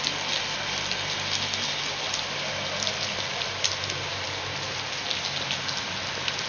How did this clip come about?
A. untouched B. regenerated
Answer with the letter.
A